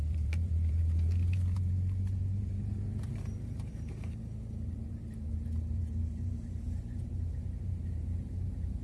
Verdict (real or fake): fake